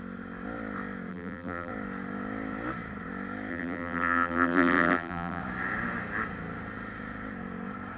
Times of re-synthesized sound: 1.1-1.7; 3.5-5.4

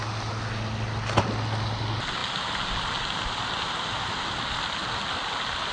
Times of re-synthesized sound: none

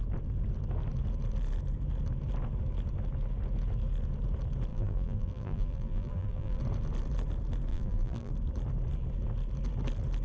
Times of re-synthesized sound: 4.7-6.6; 7.7-8.3

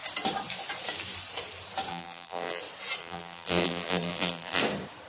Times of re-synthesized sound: 1.9-2.6; 3.0-4.6

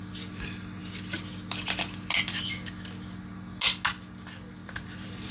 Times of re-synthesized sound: 4.6-5.3

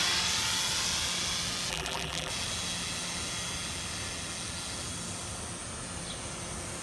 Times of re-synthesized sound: 1.7-2.3

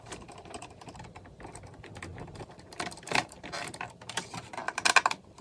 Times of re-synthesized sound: 2.1-4.2

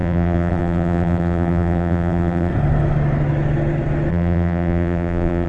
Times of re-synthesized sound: 0.0-2.5; 4.1-5.5